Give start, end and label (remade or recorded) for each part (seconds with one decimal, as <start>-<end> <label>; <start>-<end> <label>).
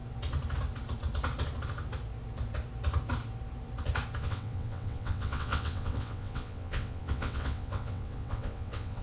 0.0-4.2 recorded; 4.2-9.0 remade